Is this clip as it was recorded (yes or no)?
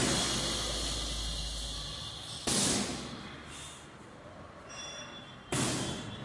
yes